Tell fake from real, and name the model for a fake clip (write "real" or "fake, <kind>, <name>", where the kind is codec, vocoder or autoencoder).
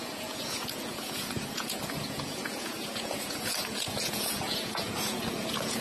fake, vocoder, Vocos